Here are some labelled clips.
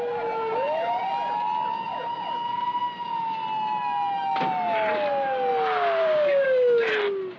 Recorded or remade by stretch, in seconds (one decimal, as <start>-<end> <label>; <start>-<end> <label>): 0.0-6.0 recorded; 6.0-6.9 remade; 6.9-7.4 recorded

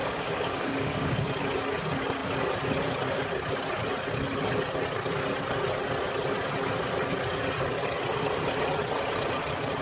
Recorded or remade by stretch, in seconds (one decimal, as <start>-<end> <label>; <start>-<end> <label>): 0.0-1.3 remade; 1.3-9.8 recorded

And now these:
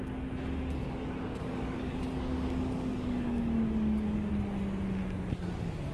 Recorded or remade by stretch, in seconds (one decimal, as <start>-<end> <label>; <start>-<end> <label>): 0.0-0.8 recorded; 0.8-4.3 remade; 4.3-5.9 recorded